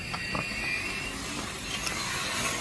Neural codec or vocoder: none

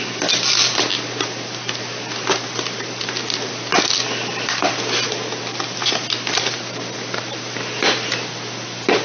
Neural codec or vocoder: none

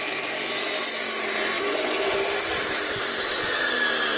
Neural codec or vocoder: none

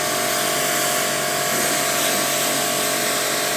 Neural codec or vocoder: none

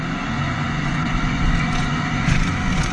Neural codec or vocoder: vocoder, Vocos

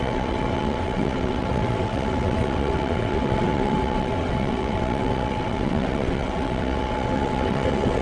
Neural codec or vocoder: vocoder, WaveNeXt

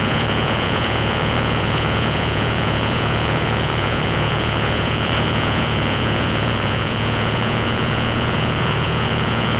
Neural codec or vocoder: vocoder, Vocos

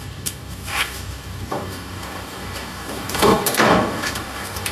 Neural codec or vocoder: codec, DAC